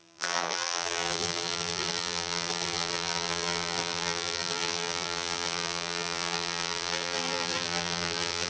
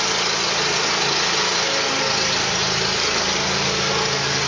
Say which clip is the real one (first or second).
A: second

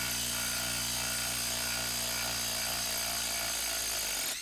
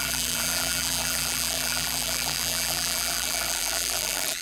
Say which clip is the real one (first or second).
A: first